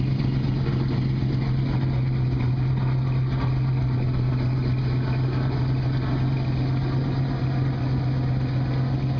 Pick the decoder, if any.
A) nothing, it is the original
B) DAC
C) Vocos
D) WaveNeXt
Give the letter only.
A